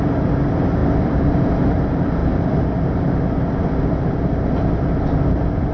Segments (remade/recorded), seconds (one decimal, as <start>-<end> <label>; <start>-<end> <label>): 0.0-0.8 recorded; 0.8-1.3 remade; 1.3-5.7 recorded